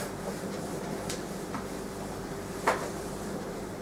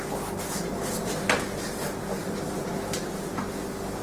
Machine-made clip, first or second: first